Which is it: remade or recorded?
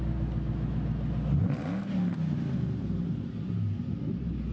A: recorded